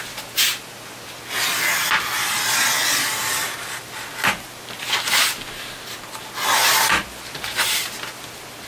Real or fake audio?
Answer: real